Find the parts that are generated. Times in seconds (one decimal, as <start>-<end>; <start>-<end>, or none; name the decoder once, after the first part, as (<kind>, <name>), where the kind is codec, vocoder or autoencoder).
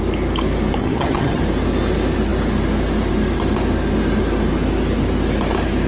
0.8-1.4 (vocoder, HiFi-GAN)